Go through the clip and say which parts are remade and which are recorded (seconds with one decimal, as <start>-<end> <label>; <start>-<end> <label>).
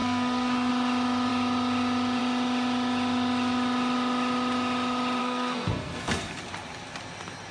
0.0-0.7 remade; 0.7-5.2 recorded; 5.2-6.4 remade; 6.4-7.5 recorded